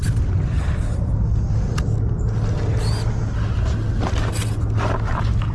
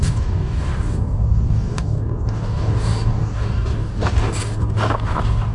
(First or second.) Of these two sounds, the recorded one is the first